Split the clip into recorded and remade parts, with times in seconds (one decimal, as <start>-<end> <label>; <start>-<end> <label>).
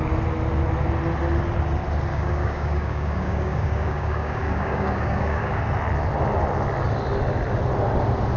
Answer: 0.0-2.1 recorded; 2.1-5.6 remade; 5.6-8.4 recorded